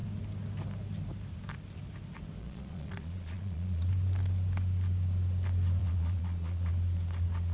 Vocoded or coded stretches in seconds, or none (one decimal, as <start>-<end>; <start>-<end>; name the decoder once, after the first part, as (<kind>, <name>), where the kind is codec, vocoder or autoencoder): 2.4-3.9 (vocoder, Vocos); 5.8-6.7